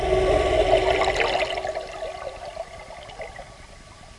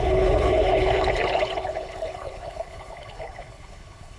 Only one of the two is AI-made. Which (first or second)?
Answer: second